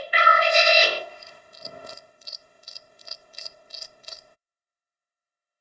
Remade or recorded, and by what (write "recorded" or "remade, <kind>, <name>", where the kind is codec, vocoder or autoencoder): remade, codec, ZipCodec